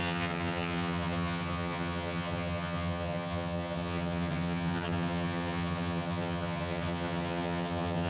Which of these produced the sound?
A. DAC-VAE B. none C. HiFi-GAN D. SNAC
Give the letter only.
C